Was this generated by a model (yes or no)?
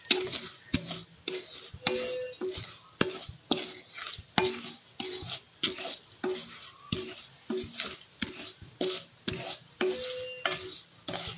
no